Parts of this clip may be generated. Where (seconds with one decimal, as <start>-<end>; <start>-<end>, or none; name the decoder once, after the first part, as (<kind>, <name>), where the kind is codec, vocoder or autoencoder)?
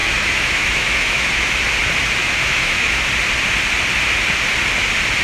0.0-1.5 (autoencoder, DAC-VAE); 2.2-3.1